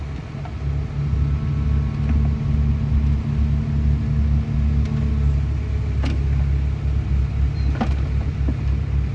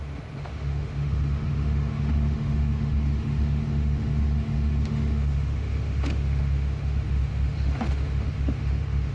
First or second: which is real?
first